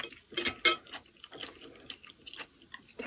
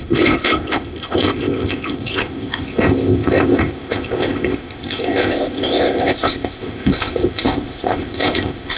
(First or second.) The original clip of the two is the first